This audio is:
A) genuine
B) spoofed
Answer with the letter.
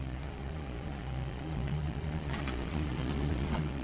B